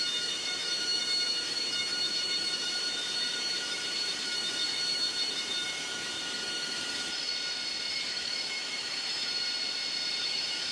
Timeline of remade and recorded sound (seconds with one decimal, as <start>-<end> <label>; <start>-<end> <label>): 0.0-7.3 remade; 7.3-7.9 recorded; 7.9-9.3 remade; 9.3-10.2 recorded; 10.2-10.7 remade